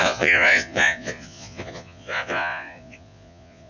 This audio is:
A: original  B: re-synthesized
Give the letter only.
B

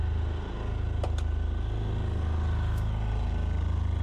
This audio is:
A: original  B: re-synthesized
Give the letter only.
A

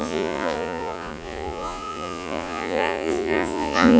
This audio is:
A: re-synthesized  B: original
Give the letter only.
A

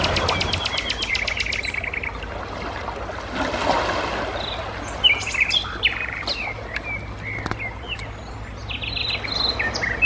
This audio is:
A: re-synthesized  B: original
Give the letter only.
B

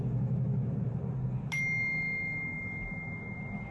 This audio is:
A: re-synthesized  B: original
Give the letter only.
B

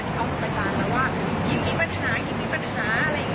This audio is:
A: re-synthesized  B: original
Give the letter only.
B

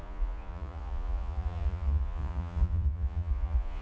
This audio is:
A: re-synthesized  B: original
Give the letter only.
A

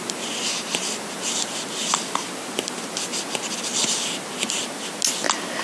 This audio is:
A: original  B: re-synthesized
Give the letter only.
A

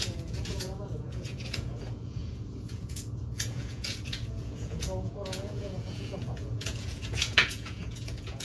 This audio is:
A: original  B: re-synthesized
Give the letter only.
B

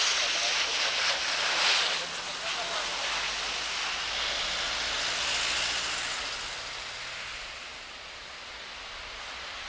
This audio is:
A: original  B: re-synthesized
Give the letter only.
A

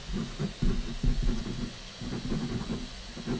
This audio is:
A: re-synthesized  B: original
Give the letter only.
A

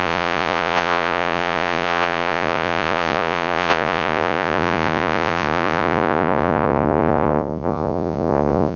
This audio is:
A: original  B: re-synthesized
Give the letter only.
B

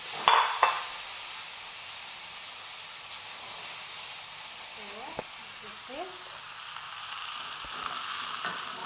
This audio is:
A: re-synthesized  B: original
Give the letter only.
B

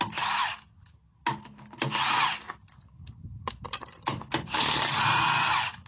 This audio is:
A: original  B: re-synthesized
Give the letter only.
A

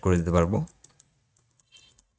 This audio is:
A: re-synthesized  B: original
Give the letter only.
A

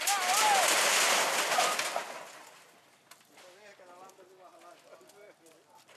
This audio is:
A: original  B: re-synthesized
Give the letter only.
A